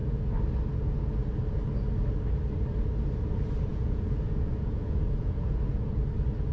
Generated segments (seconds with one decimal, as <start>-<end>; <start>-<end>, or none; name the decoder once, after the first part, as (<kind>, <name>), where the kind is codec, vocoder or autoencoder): 3.7-5.9 (vocoder, Vocos)